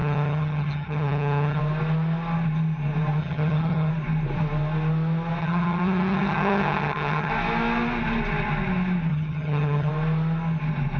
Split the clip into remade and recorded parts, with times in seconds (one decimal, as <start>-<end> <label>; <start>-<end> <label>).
0.0-1.6 remade; 1.6-3.2 recorded; 3.2-3.9 remade; 3.9-5.4 recorded; 5.4-7.3 remade; 7.3-9.1 recorded; 9.1-9.9 remade; 9.9-11.0 recorded